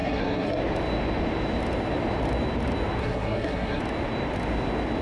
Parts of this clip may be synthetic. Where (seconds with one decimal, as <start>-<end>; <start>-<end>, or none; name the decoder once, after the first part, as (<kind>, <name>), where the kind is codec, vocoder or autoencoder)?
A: 0.0-0.6 (codec, SNAC); 3.0-3.8